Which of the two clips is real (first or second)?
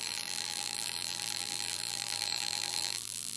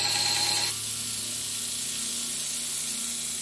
second